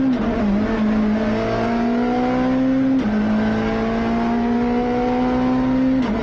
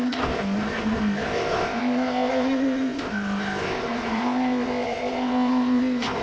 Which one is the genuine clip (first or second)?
first